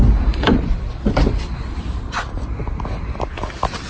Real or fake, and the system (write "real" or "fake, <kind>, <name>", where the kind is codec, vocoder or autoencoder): fake, vocoder, BigVGAN v2